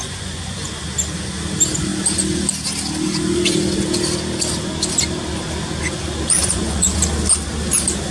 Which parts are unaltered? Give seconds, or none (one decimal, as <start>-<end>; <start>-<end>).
0.7-6.4; 7.0-8.1